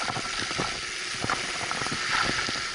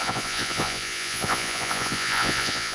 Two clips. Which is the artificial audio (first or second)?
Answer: second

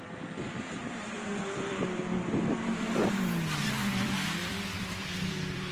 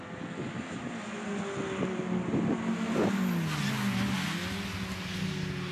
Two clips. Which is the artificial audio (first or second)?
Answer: first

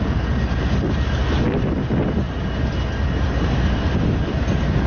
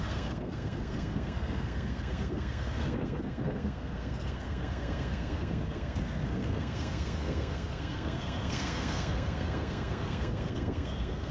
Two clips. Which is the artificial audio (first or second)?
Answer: second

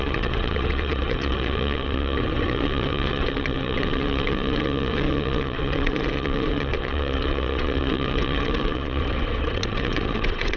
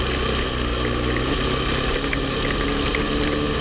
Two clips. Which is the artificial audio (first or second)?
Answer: first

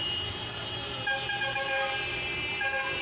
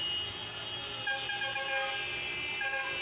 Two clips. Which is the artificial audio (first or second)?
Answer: first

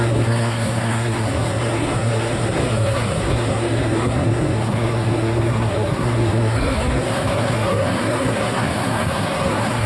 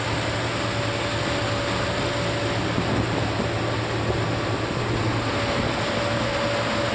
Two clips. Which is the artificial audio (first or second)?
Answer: first